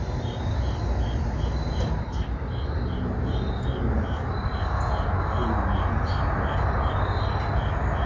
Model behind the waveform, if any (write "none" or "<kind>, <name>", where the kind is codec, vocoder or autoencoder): none